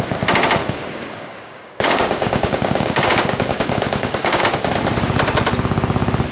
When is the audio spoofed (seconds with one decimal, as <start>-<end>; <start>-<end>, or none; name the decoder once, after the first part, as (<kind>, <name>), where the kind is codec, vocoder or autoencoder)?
0.6-4.4 (codec, DAC)